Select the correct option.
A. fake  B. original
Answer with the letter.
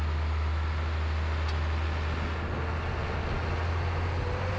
B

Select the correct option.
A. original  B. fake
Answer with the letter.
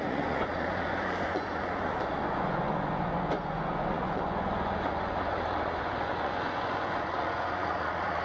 B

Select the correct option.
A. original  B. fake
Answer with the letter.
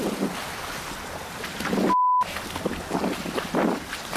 A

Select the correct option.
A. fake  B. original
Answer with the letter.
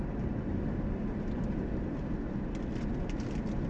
B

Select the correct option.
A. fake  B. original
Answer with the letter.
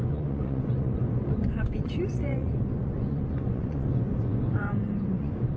A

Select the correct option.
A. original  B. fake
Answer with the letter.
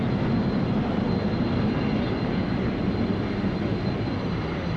A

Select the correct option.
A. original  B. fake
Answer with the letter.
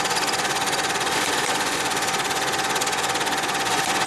B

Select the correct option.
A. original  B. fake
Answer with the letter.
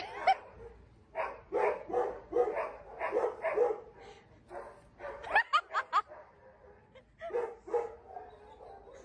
A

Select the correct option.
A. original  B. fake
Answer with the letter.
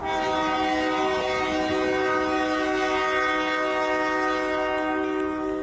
A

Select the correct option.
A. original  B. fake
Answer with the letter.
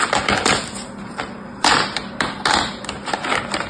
A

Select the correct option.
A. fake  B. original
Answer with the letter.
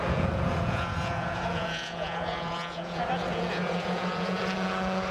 A